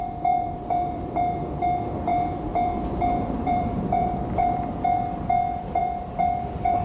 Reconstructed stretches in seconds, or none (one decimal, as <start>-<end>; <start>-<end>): 0.0-6.8